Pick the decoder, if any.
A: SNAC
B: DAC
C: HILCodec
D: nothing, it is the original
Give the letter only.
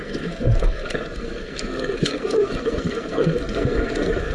A